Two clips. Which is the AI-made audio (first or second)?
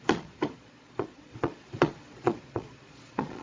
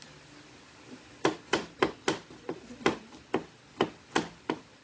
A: first